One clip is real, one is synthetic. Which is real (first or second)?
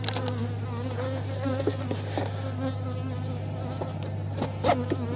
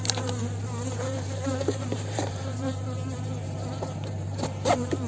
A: first